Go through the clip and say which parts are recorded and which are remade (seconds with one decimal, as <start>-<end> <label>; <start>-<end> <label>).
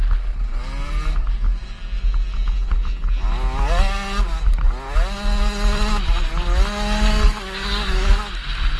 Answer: 0.0-7.1 recorded; 7.1-8.2 remade; 8.2-8.8 recorded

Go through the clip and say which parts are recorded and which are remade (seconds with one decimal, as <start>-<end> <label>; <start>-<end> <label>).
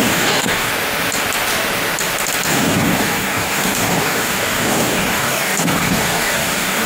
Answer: 0.0-0.7 remade; 0.7-2.5 recorded; 2.5-6.9 remade